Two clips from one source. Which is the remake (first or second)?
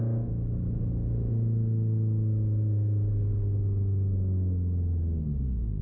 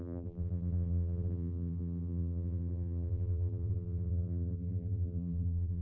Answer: second